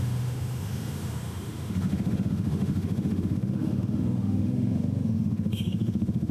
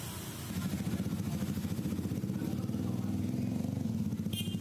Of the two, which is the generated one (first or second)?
first